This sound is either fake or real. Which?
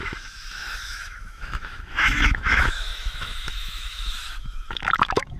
fake